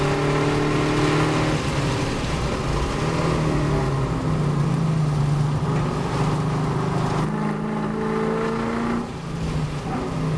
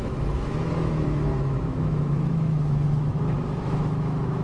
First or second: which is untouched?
first